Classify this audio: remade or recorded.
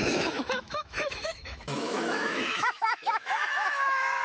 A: remade